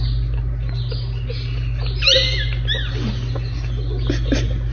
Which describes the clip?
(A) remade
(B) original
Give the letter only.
B